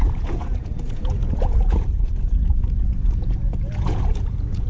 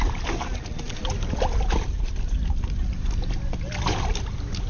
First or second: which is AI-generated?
first